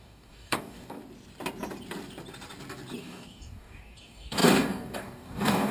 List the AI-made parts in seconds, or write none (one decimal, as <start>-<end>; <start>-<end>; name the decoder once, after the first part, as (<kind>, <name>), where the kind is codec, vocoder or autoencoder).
0.0-1.0 (codec, DAC); 3.0-5.7